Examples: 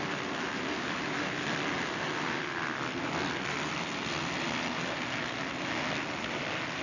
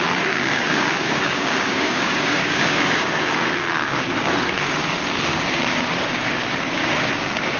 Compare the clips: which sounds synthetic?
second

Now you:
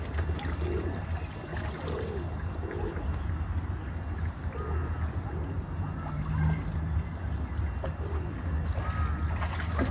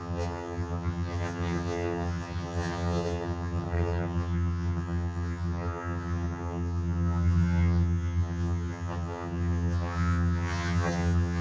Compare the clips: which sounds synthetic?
second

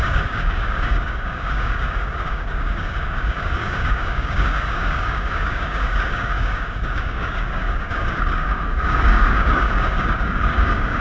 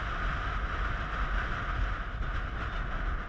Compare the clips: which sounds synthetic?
first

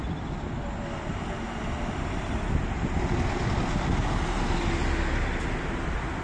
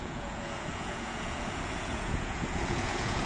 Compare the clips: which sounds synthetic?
second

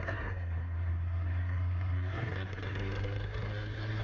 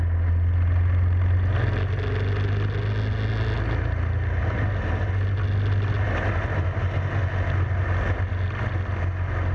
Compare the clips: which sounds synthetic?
first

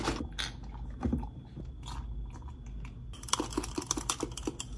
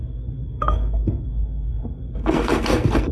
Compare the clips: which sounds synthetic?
second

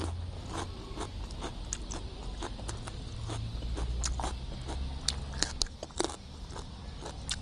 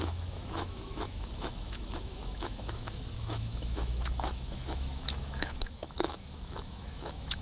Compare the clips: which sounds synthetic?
second